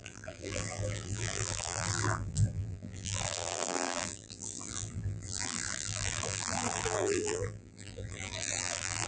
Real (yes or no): no